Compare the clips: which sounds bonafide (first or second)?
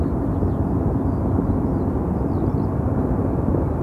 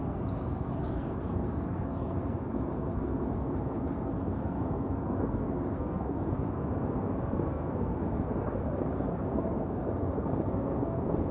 first